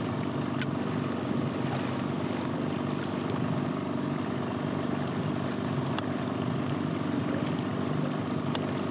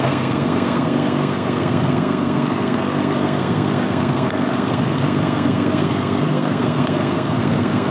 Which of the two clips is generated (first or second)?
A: second